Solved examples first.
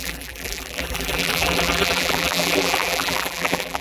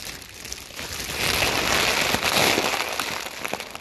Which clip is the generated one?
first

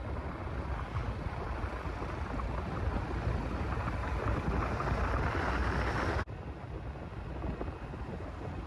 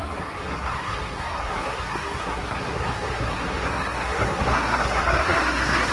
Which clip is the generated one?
second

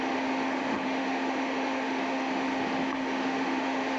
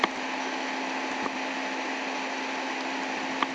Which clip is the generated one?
first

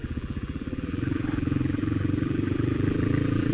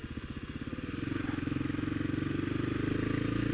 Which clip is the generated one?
first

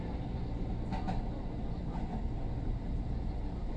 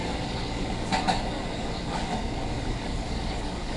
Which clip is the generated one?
second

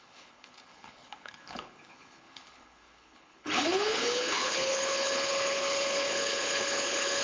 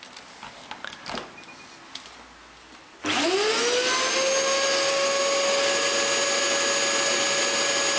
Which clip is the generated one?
first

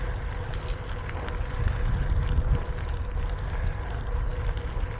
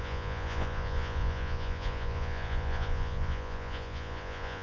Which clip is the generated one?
second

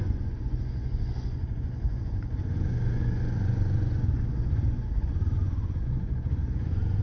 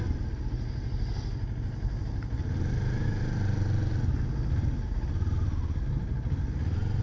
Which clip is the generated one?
first